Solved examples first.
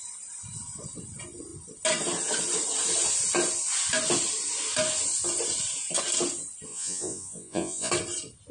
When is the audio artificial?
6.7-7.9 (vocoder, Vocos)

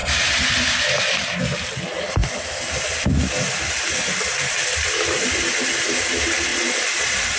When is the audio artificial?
6.5-7.4 (vocoder, Vocos)

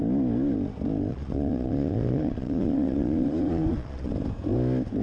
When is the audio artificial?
1.1-4.1 (vocoder, Vocos)

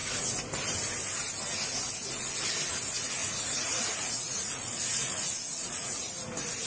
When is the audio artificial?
3.2-6.1 (vocoder, Vocos)

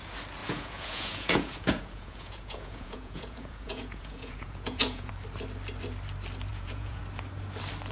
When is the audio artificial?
0.4-5.1 (vocoder, Vocos); 6.5-7.0

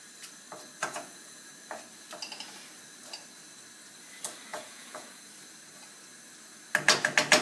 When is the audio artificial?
0.8-1.5 (vocoder, Vocos); 4.5-5.3

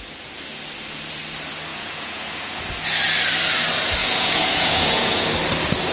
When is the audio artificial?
1.7-2.7 (vocoder, Vocos); 4.0-5.3